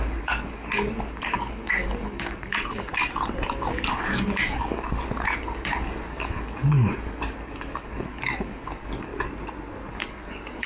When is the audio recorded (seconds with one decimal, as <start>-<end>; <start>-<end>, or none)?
2.9-3.9; 9.1-9.9